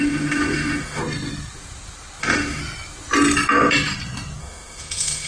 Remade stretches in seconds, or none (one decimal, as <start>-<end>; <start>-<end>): 0.0-1.0; 2.2-2.6; 4.4-5.3